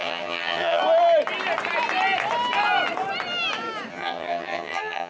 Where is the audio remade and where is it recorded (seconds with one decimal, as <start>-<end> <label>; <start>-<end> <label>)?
0.0-0.8 remade; 0.8-3.9 recorded; 3.9-5.1 remade